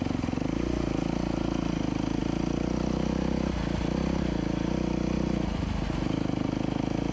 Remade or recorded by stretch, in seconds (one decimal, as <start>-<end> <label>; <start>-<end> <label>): 0.0-7.1 recorded